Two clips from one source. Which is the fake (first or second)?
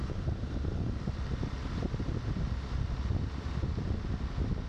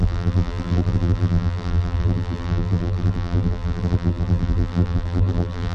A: second